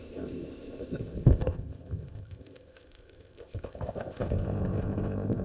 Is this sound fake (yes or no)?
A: yes